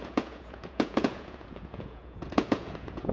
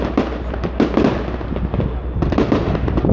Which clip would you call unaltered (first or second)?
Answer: second